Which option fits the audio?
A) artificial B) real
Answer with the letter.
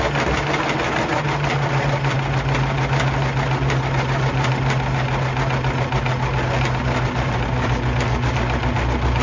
B